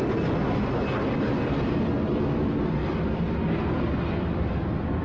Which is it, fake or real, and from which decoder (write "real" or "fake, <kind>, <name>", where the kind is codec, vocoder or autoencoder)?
real